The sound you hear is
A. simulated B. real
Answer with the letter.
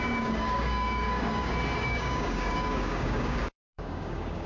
A